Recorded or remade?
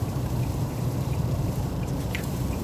remade